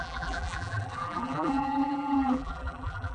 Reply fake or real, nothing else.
fake